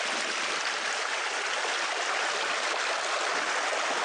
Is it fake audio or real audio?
real